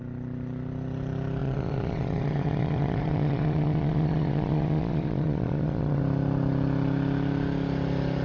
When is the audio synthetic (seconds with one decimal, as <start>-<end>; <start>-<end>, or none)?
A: 1.4-6.0